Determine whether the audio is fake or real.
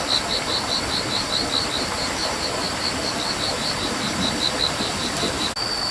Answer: real